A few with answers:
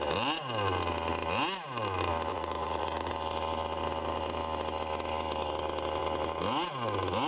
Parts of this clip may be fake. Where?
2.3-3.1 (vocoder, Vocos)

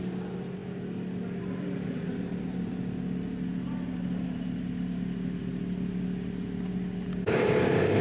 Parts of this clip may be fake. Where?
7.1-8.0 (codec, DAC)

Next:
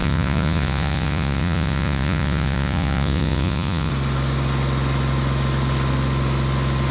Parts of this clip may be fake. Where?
0.0-3.9 (vocoder, Vocos)

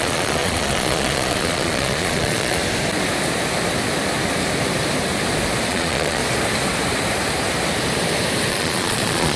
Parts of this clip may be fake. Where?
0.0-2.6 (vocoder, Vocos); 5.7-6.2; 8.5-9.4

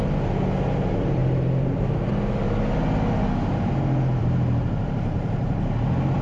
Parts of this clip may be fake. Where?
1.2-2.1 (vocoder, BigVGAN v2); 4.2-5.5

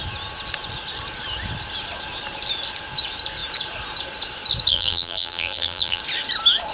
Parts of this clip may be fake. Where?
4.7-6.0 (vocoder, BigVGAN v2)